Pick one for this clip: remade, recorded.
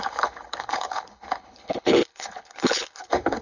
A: remade